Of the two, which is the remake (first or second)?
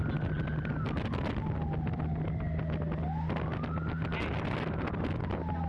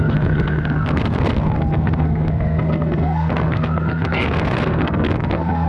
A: second